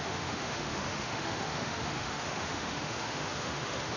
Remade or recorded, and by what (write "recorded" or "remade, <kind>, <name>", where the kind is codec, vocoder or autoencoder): remade, autoencoder, DAC-VAE